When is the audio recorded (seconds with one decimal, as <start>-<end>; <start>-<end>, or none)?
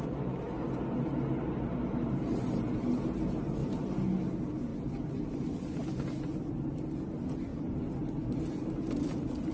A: 0.0-9.5